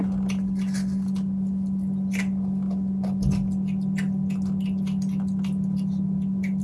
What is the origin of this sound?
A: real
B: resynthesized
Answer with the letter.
A